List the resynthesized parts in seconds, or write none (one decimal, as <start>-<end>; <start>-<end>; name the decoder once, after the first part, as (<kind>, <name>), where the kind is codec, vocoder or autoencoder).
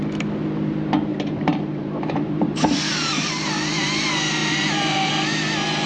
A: 1.1-3.9 (vocoder, BigVGAN v2); 4.4-5.1